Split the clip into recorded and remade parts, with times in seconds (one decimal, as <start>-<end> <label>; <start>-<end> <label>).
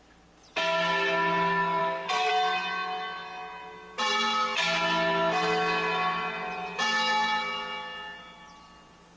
0.0-1.8 recorded; 1.8-2.3 remade; 2.3-9.2 recorded